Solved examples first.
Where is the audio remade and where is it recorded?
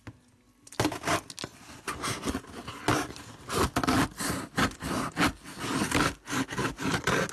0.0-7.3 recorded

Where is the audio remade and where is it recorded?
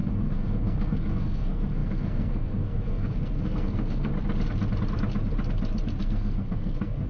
0.0-4.1 remade; 4.1-6.0 recorded; 6.0-7.1 remade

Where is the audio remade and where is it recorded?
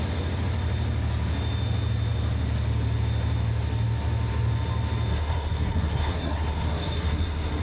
0.0-5.1 recorded; 5.1-7.6 remade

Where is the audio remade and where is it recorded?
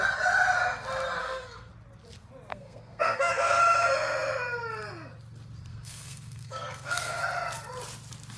0.0-1.2 recorded; 1.2-1.7 remade; 1.7-2.5 recorded; 2.5-3.6 remade; 3.6-5.7 recorded; 5.7-7.2 remade; 7.2-8.4 recorded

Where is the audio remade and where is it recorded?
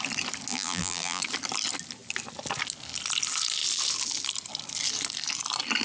0.0-0.5 recorded; 0.5-1.2 remade; 1.2-5.8 recorded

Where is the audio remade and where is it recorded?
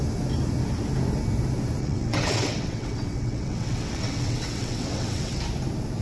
0.0-1.8 recorded; 1.8-5.4 remade; 5.4-6.0 recorded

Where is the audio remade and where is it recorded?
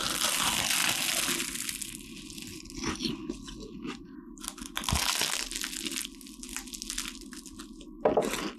0.0-8.6 recorded